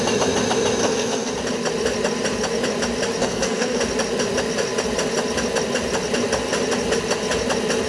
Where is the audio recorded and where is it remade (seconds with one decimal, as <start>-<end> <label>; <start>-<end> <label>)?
0.0-0.8 recorded; 0.8-1.3 remade; 1.3-3.2 recorded; 3.2-3.8 remade; 3.8-7.9 recorded